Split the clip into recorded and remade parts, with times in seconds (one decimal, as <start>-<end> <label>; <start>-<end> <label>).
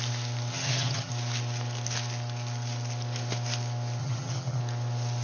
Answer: 0.0-0.5 recorded; 0.5-1.1 remade; 1.1-4.0 recorded; 4.0-4.6 remade; 4.6-5.2 recorded